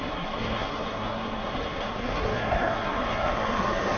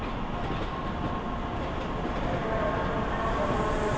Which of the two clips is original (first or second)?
second